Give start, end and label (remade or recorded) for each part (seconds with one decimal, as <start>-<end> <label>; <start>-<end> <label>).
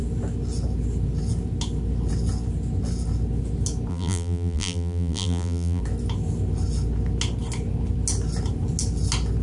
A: 0.0-3.9 recorded; 3.9-5.8 remade; 5.8-9.4 recorded